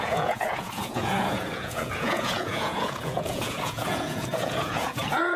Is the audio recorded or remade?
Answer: remade